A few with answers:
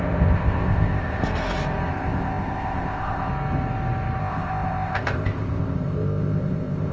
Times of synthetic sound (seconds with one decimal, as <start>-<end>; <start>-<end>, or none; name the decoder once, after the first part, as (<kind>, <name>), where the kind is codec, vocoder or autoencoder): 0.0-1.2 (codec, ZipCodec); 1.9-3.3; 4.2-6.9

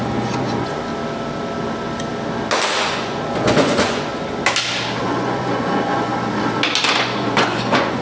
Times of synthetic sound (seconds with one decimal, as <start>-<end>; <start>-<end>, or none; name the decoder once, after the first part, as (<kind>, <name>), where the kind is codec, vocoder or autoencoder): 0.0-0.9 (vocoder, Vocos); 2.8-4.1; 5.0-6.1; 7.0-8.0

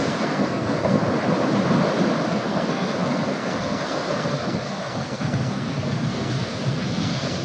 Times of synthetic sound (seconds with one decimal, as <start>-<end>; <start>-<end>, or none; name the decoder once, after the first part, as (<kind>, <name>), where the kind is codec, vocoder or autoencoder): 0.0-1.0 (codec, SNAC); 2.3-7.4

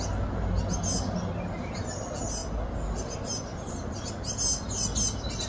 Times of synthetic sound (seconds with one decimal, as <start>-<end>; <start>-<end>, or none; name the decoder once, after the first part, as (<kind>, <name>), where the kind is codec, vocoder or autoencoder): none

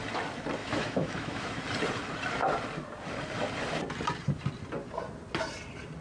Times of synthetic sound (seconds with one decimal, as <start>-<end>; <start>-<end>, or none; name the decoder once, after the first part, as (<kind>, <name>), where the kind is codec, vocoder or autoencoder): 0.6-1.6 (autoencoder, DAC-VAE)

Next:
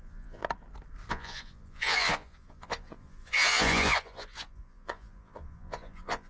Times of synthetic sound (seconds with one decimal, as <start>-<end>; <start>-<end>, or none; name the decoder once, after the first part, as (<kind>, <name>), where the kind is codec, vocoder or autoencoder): 0.0-0.4 (vocoder, Vocos); 1.1-6.3

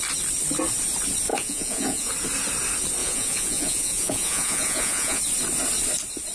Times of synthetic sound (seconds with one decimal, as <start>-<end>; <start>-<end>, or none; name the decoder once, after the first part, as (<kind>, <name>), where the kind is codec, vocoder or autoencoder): 1.3-2.1 (vocoder, Vocos); 3.0-5.2